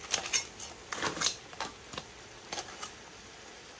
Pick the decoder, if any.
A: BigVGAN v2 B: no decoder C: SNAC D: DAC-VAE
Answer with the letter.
B